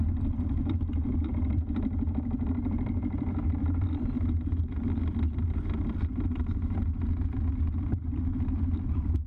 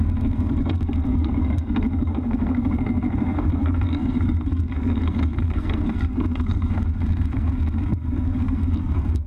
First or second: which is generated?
second